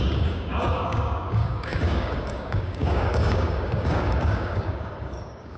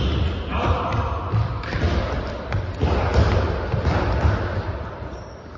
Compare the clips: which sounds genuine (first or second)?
second